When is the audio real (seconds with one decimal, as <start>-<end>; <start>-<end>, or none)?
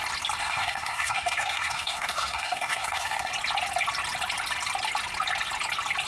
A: 0.0-0.4; 3.3-6.1